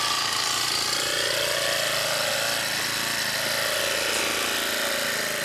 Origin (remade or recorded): recorded